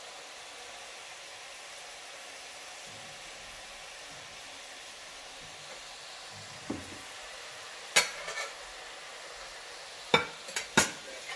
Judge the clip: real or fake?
real